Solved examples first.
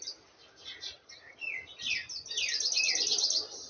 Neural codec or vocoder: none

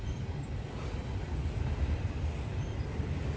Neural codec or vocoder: none